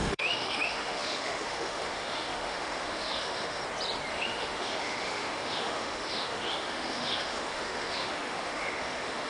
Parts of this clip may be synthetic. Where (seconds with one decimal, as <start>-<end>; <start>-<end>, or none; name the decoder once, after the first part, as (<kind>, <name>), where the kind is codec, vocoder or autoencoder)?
0.0-3.6 (autoencoder, DAC-VAE); 4.1-9.3